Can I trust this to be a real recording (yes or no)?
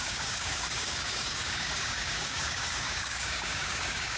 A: no